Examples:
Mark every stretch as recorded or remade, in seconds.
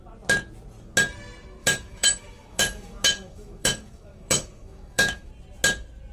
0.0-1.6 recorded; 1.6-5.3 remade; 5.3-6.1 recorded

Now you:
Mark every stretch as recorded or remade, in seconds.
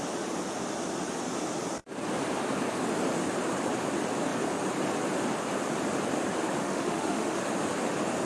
0.0-6.6 recorded; 6.6-7.4 remade; 7.4-8.3 recorded